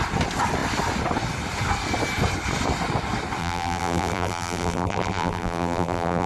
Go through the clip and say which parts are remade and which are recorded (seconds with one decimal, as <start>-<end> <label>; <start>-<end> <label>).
0.0-3.4 recorded; 3.4-6.3 remade